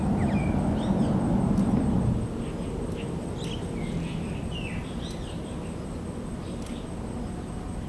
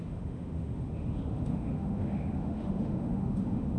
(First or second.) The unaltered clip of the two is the first